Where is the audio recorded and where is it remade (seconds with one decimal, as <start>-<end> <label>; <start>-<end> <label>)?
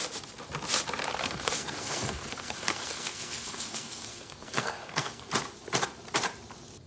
0.0-1.2 recorded; 1.2-5.3 remade; 5.3-6.9 recorded